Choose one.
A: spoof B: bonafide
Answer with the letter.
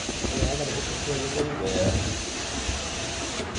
B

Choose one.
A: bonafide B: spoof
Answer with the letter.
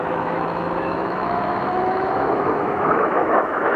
B